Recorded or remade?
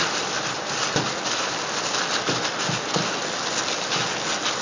recorded